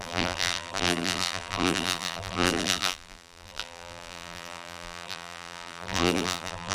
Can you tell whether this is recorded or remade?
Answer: remade